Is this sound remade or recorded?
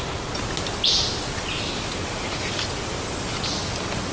recorded